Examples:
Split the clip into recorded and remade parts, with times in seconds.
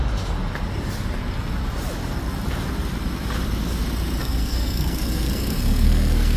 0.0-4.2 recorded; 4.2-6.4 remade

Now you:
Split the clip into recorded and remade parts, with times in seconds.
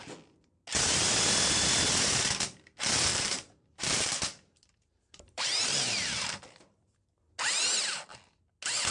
0.0-3.1 recorded; 3.1-6.6 remade; 6.6-8.9 recorded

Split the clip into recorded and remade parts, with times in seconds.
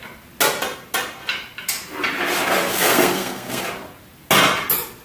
0.0-2.7 recorded; 2.7-3.6 remade; 3.6-5.0 recorded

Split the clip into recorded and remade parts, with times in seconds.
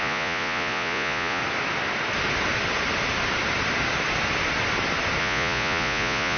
0.0-1.4 remade; 1.4-5.2 recorded; 5.2-6.4 remade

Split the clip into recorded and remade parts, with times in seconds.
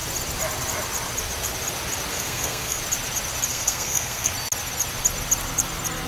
0.0-2.1 recorded; 2.1-2.8 remade; 2.8-3.5 recorded; 3.5-4.3 remade; 4.3-6.1 recorded